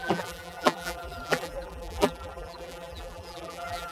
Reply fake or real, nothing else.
fake